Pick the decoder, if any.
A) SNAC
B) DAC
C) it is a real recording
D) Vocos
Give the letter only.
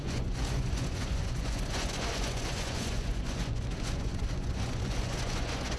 D